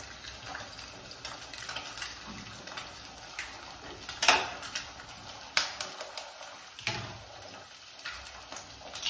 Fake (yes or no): no